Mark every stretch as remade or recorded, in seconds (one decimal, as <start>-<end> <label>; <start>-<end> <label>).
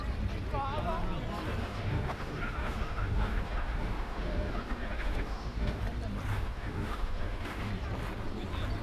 0.0-1.6 recorded; 1.6-5.8 remade; 5.8-6.3 recorded; 6.3-7.7 remade; 7.7-8.8 recorded